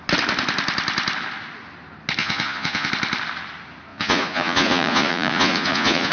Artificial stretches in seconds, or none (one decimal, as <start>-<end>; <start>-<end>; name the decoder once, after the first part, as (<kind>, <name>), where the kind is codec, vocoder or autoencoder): 2.2-2.9 (vocoder, Vocos); 3.9-6.1